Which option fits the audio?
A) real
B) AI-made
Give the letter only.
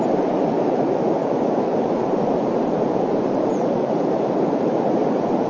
B